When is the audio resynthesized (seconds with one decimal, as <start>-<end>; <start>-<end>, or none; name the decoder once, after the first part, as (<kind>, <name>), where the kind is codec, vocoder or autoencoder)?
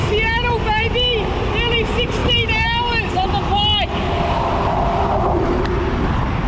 none